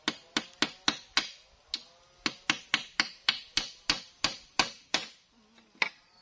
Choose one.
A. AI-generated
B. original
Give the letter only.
B